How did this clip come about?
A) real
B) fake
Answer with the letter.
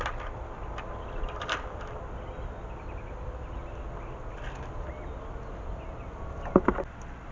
A